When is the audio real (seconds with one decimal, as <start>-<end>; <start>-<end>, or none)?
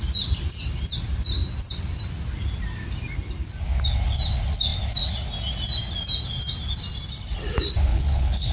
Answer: 0.0-7.9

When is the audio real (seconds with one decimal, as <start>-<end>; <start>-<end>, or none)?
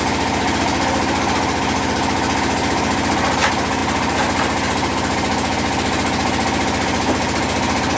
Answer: 0.0-8.0